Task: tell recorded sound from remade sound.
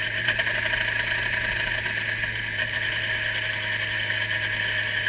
recorded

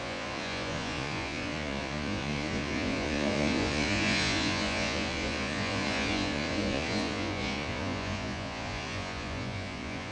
remade